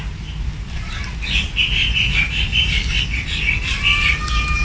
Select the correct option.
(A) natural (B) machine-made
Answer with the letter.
A